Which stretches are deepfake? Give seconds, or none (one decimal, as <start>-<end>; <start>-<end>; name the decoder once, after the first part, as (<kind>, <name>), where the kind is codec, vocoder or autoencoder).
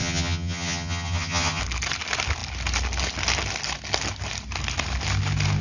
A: 0.0-1.6 (vocoder, HiFi-GAN)